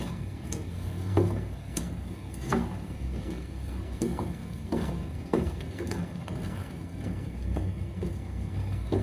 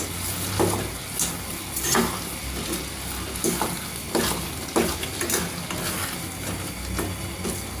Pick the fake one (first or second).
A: first